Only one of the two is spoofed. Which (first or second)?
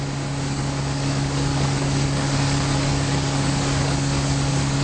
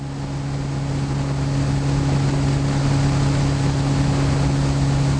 first